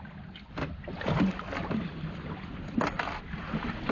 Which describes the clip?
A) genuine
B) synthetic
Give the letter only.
A